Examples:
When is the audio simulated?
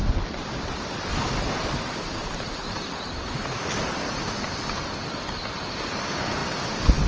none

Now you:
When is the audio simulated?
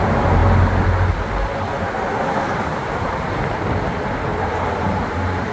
4.3-5.5 (vocoder, BigVGAN v2)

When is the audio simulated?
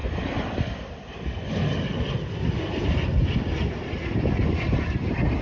none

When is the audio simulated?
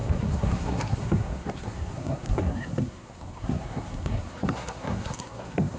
0.0-5.8 (codec, SNAC)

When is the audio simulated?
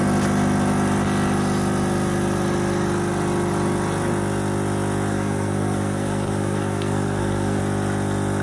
5.1-7.6 (codec, SNAC)